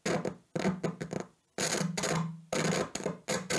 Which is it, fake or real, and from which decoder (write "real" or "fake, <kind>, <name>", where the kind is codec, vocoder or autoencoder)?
real